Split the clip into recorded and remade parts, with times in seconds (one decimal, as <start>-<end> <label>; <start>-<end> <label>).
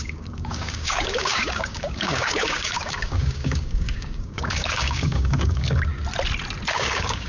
0.0-5.9 remade; 5.9-6.7 recorded; 6.7-7.3 remade